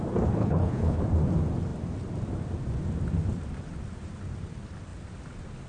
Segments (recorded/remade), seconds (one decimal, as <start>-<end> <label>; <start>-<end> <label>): 0.0-0.4 recorded; 0.4-1.0 remade; 1.0-5.7 recorded